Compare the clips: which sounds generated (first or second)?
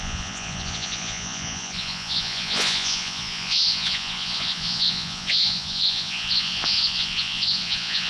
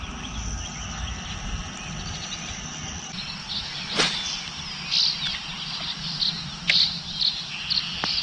first